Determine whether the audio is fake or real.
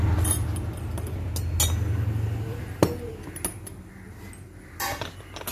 real